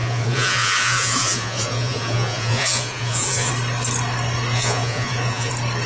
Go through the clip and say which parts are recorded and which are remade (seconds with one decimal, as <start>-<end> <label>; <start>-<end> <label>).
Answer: 0.0-3.5 remade; 3.5-4.5 recorded; 4.5-5.5 remade; 5.5-5.9 recorded